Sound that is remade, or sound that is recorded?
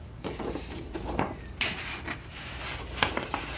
remade